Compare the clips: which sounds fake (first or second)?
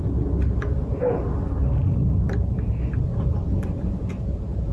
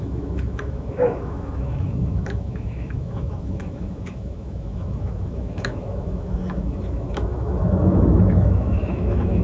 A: second